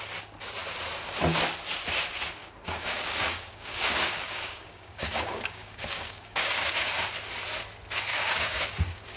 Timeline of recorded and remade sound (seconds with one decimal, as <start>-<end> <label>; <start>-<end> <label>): 0.0-2.4 recorded; 2.4-6.7 remade; 6.7-8.1 recorded; 8.1-9.2 remade